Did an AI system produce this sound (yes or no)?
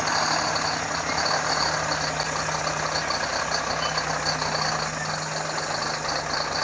no